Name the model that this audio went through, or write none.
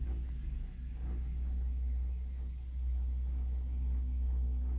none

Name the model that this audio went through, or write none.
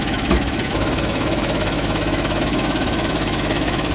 autoencoder, DAC-VAE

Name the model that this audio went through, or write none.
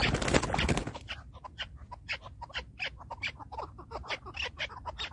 vocoder, BigVGAN v2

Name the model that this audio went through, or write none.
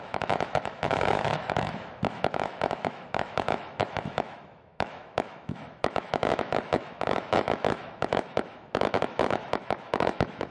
autoencoder, DAC-VAE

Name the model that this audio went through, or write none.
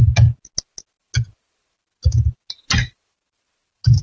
none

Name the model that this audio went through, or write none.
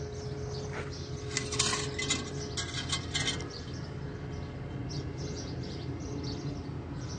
none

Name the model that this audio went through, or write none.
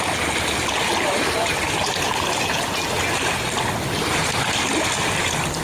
none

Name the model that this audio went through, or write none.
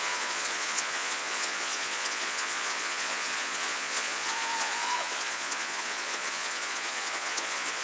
vocoder, Vocos